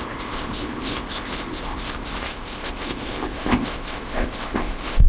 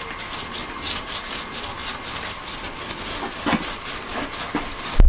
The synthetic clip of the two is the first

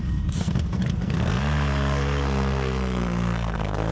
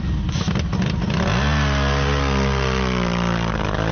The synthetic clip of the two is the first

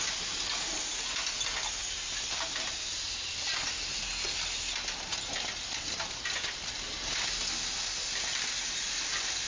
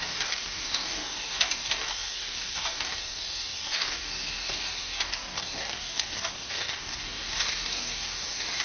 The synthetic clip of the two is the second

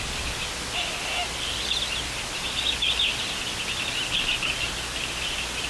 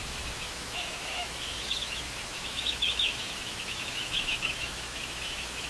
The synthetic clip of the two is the second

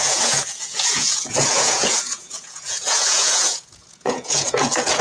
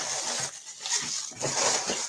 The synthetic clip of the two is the first